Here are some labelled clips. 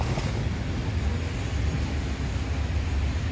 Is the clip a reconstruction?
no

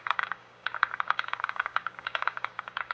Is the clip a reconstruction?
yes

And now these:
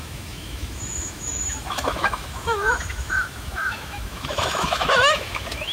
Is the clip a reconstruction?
yes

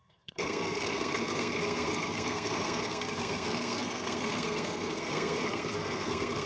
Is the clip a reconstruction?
yes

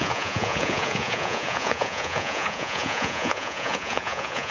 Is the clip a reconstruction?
yes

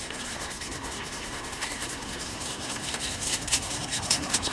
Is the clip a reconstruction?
yes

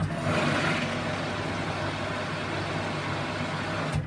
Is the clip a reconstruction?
no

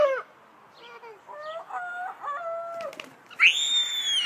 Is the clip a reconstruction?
no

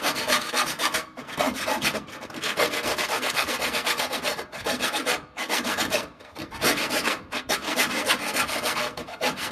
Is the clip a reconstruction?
yes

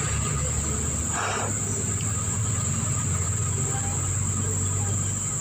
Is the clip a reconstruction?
yes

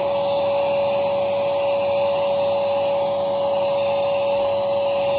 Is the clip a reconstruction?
no